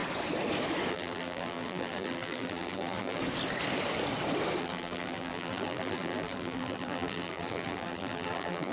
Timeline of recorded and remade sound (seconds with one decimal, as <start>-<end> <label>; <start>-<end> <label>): 0.0-0.9 recorded; 0.9-3.2 remade; 3.2-4.6 recorded; 4.6-8.7 remade